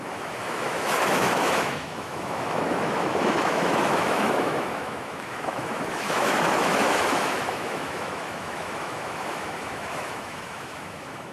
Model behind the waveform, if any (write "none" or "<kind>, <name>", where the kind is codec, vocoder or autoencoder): autoencoder, DAC-VAE